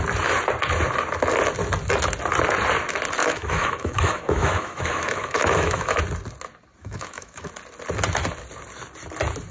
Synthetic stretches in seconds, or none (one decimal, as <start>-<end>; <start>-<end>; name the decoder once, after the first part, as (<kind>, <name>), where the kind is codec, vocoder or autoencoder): 3.2-6.0 (autoencoder, DAC-VAE); 6.8-7.5